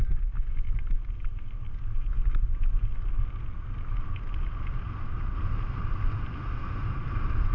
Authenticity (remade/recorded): recorded